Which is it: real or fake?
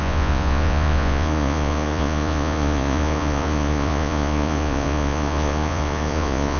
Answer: fake